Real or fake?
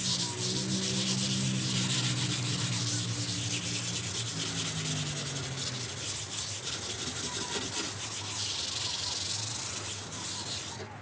real